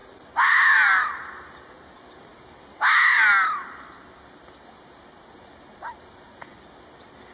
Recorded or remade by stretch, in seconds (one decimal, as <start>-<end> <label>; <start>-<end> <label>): 0.0-7.3 recorded